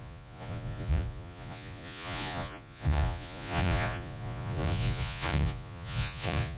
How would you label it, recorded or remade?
remade